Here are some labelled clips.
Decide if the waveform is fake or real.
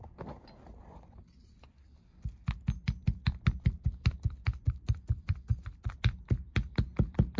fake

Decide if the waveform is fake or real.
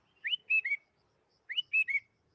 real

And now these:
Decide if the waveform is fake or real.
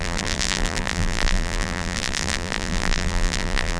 fake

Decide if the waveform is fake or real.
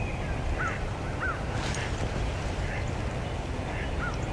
real